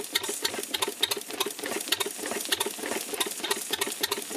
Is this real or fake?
real